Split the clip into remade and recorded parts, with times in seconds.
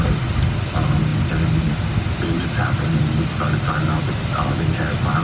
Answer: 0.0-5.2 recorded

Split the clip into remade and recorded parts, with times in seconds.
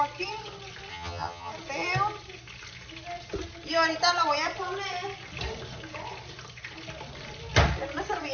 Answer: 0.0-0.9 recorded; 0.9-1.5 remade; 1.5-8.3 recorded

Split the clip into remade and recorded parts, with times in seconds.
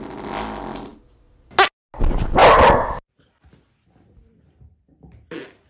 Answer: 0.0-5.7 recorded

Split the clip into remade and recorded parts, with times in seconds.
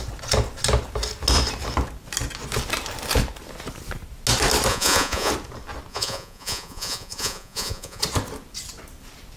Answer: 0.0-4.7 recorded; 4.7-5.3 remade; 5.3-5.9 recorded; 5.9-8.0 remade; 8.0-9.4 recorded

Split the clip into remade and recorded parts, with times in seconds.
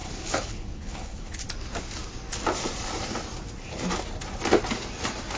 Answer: 0.0-1.4 remade; 1.4-5.4 recorded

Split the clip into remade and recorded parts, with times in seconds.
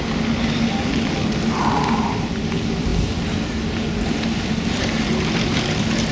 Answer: 0.0-6.1 recorded